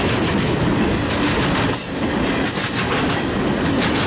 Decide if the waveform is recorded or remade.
recorded